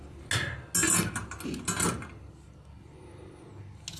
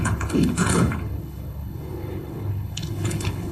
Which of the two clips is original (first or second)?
first